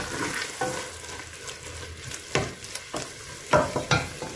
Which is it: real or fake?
real